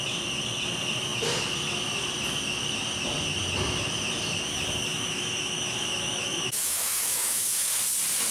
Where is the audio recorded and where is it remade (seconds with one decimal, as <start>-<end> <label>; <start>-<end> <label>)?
0.0-4.9 recorded; 4.9-7.8 remade; 7.8-8.3 recorded